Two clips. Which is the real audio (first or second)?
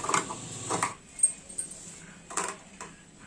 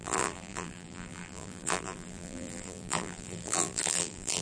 first